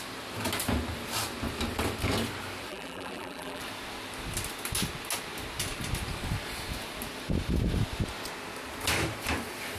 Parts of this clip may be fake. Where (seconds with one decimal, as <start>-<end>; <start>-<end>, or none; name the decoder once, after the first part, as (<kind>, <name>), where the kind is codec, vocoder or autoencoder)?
2.7-3.6 (vocoder, BigVGAN v2)